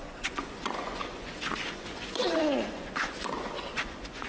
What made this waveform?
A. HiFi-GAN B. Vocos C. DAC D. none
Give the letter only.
B